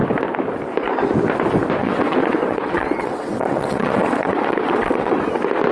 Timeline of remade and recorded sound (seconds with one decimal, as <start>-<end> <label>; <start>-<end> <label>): 0.0-1.8 recorded; 1.8-5.2 remade; 5.2-5.7 recorded